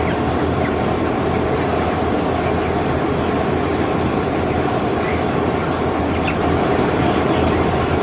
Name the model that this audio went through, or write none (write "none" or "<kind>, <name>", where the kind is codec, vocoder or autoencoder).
none